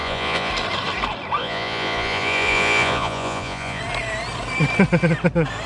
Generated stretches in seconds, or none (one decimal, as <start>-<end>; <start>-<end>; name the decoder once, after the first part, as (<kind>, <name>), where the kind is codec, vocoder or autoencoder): 0.0-0.5 (vocoder, Vocos); 1.4-3.8